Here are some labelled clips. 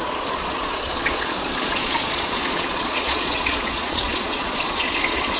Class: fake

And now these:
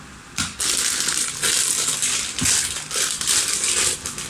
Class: real